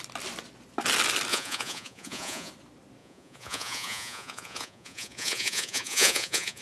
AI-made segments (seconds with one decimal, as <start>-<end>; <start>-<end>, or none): 1.3-2.5; 3.0-6.6

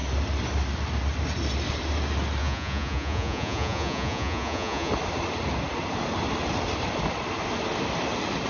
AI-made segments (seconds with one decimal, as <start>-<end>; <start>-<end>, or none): 2.4-4.9

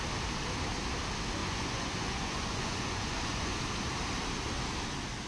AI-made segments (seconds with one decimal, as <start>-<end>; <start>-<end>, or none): 1.4-3.6

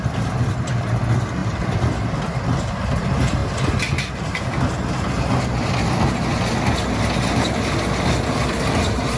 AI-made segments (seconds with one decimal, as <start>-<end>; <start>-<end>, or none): none

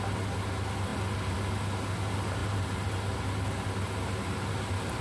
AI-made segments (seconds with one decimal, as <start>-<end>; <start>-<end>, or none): none